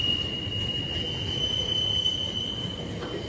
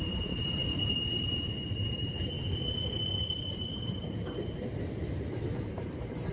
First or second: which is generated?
second